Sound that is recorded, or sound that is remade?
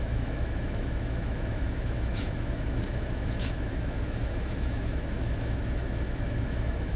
remade